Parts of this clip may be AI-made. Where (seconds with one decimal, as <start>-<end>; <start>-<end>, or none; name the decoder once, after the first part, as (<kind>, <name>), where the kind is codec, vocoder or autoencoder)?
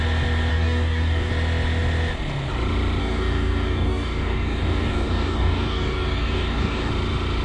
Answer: 0.5-1.3 (codec, DAC); 3.0-6.9